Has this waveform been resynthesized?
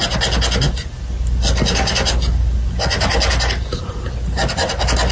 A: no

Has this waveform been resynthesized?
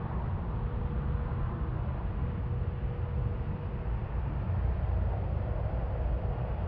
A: no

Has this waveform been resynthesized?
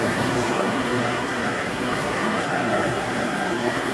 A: yes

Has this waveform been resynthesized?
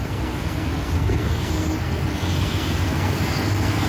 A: yes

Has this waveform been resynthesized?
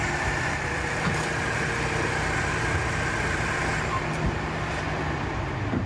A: yes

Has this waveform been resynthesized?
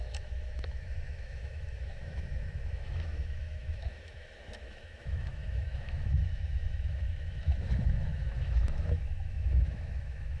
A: yes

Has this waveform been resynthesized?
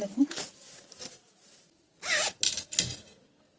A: no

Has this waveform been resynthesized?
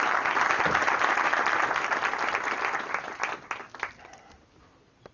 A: no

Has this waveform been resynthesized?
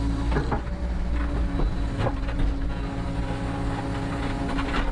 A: no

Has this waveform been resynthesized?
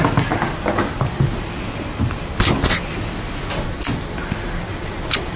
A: no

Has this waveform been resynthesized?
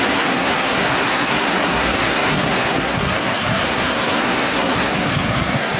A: yes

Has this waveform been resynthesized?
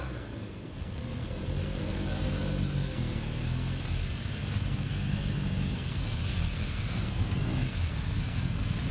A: yes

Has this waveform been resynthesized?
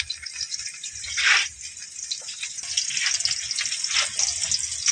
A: no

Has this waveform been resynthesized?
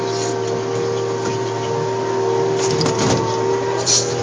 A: no